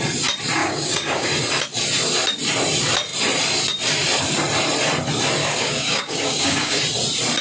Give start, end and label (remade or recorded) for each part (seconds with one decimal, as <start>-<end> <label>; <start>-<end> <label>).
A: 0.0-0.6 recorded; 0.6-1.3 remade; 1.3-5.4 recorded; 5.4-6.8 remade; 6.8-7.4 recorded